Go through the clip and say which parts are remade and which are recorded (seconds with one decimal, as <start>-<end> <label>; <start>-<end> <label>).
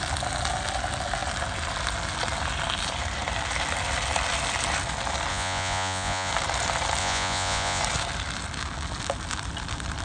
0.0-5.3 recorded; 5.3-6.3 remade; 6.3-7.0 recorded; 7.0-7.8 remade; 7.8-10.0 recorded